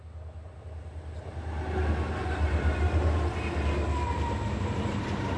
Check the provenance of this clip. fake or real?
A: real